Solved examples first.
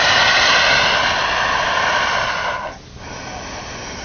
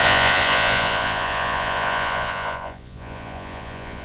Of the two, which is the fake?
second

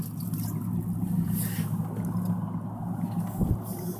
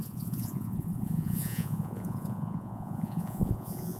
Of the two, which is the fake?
second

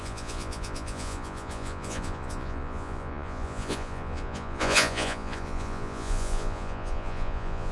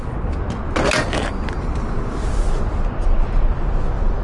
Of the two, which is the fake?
first